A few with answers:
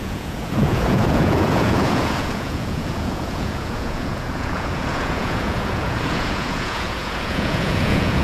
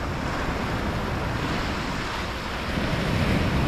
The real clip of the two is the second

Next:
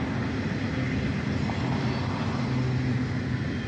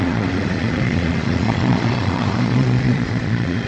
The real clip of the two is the first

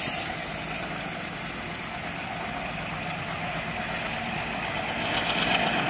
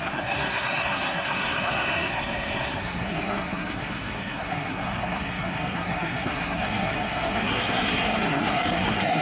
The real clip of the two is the first